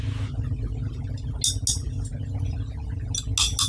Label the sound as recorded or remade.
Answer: recorded